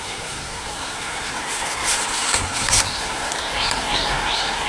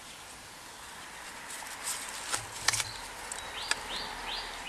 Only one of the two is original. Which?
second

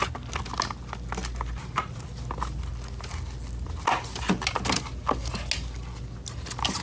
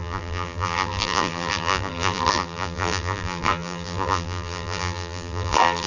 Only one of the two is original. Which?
first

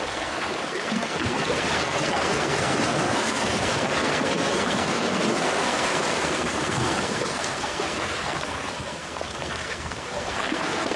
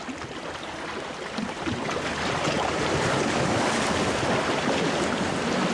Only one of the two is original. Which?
second